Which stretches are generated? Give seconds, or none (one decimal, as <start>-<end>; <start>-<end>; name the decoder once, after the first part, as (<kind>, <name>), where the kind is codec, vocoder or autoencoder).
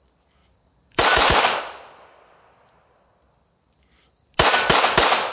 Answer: 0.4-1.6 (vocoder, BigVGAN v2)